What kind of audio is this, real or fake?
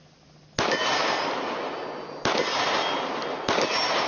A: real